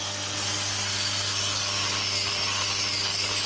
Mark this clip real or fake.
real